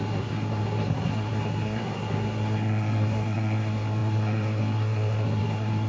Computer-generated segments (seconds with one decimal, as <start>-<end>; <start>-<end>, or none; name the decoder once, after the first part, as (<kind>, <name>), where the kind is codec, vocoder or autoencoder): 0.0-5.9 (codec, SNAC)

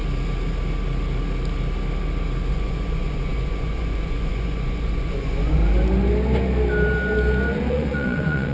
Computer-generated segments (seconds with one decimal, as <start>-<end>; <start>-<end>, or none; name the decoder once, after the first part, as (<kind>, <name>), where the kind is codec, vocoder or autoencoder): 2.5-5.6 (vocoder, Vocos); 7.7-8.5

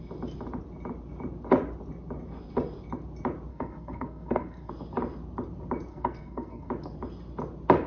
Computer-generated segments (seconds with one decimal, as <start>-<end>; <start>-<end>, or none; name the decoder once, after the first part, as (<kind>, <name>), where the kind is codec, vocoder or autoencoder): 3.5-4.7 (codec, SNAC); 5.9-6.7

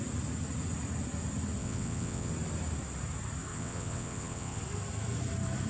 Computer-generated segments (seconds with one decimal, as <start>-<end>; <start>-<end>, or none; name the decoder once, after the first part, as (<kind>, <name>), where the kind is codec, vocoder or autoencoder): 1.6-2.3 (vocoder, WaveNeXt); 3.5-4.6